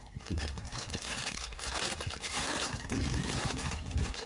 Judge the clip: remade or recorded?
remade